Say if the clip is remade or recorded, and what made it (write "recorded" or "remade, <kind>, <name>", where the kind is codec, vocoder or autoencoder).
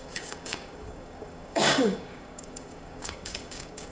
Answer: remade, codec, DAC